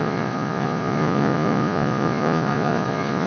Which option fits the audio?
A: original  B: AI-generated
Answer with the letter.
B